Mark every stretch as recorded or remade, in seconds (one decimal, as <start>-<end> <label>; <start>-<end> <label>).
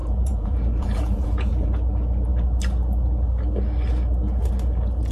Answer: 0.0-1.7 remade; 1.7-5.1 recorded